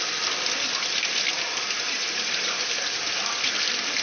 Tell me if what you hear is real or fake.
real